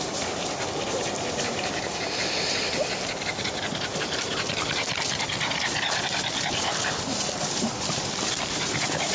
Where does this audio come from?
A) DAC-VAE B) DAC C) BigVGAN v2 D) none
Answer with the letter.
C